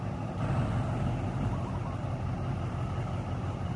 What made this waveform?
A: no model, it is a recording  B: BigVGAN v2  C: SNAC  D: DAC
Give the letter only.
A